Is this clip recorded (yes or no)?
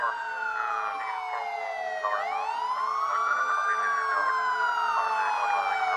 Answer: yes